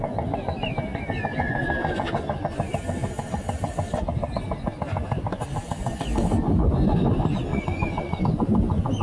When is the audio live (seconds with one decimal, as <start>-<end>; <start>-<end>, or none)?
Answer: 0.0-7.5; 8.2-9.0